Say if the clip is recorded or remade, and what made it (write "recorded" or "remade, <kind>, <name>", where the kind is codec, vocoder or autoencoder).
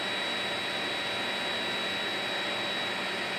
recorded